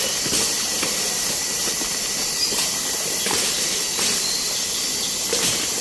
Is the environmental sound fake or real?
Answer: fake